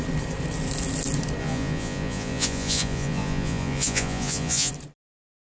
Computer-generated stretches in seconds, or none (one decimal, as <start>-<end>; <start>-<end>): 1.4-4.7

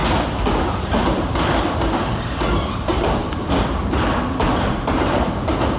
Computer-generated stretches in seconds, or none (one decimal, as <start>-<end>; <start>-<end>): 1.6-3.2; 3.8-5.8

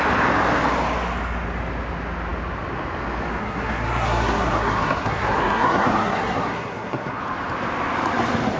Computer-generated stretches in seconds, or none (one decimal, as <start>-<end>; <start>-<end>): 3.4-7.2

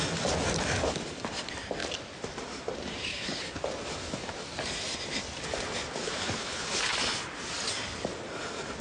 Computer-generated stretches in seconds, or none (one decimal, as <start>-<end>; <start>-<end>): 3.1-3.6; 6.0-6.8

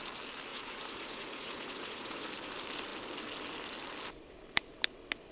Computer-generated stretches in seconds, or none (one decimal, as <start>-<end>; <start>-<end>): 0.5-2.2

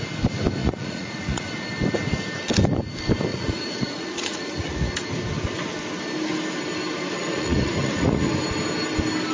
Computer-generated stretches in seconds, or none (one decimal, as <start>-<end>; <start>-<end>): 0.6-1.4; 3.3-4.9; 7.2-8.3

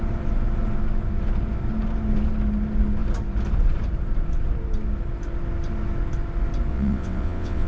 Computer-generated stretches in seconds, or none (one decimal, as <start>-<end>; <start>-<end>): 6.7-7.7

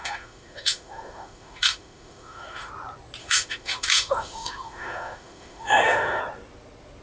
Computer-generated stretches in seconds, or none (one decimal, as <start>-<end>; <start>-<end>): 0.0-2.7; 3.2-6.2